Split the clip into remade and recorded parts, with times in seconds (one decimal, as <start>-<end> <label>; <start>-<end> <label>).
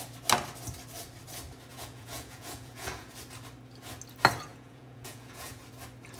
0.0-1.7 recorded; 1.7-3.1 remade; 3.1-4.5 recorded; 4.5-5.6 remade; 5.6-6.2 recorded